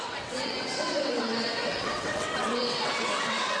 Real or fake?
fake